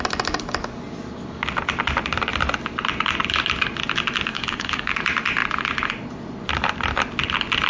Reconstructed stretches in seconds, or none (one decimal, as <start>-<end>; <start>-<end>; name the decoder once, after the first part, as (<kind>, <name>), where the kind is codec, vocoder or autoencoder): 4.3-4.9 (codec, DAC)